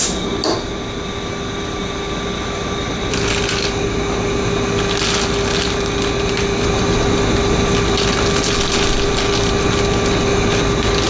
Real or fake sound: real